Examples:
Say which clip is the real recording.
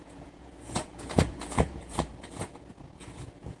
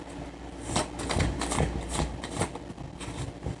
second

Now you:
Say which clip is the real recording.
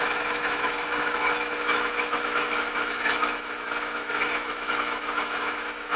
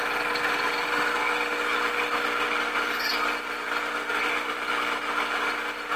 second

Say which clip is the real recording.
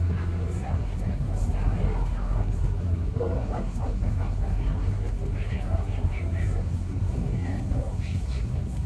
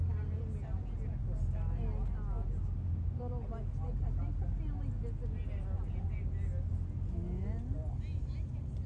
second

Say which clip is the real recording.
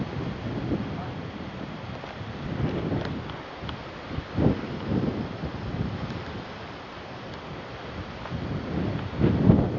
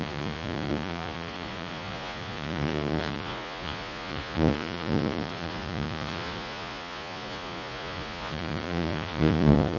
first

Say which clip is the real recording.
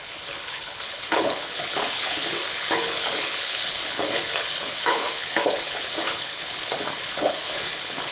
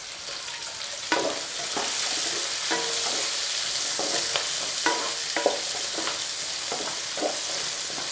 second